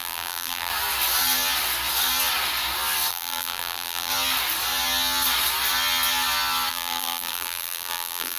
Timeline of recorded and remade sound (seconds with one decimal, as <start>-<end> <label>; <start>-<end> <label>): 0.0-0.7 remade; 0.7-3.1 recorded; 3.1-4.1 remade; 4.1-6.7 recorded; 6.7-8.4 remade